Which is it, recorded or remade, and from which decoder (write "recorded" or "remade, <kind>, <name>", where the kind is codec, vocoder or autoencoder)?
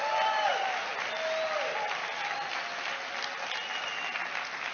recorded